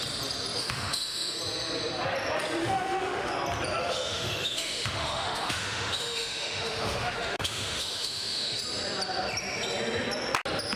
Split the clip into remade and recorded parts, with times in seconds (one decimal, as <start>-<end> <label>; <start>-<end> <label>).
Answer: 0.0-0.6 recorded; 0.6-1.4 remade; 1.4-2.6 recorded; 2.6-3.3 remade; 3.3-3.8 recorded; 3.8-8.6 remade; 8.6-10.8 recorded